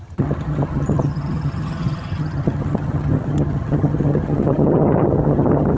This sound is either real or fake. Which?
fake